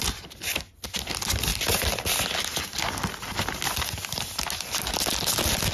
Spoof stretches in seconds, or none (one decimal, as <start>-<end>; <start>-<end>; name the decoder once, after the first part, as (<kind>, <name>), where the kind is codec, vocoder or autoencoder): none